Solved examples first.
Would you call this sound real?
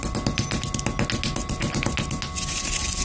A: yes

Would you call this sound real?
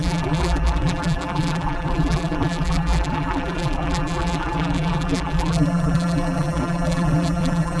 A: no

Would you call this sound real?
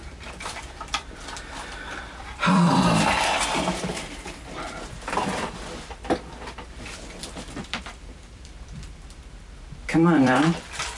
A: no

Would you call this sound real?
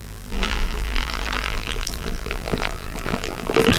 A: no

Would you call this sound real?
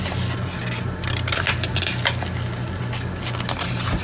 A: yes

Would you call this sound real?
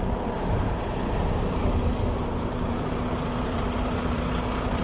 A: no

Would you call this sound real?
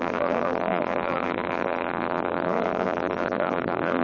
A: no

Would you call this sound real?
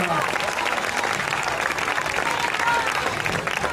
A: yes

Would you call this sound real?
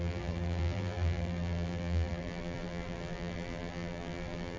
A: no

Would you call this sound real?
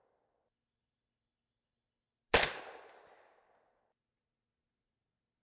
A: yes